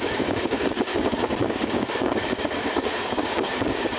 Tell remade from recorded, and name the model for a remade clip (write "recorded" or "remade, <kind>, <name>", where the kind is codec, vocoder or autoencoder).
remade, codec, DAC